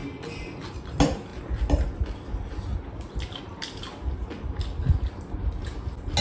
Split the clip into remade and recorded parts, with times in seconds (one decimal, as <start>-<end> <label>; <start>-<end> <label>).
0.0-6.2 recorded